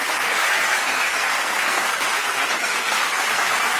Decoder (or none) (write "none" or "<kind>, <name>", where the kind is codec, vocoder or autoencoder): codec, SNAC